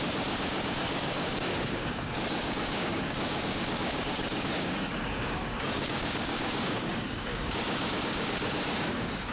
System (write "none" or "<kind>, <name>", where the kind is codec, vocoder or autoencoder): codec, DAC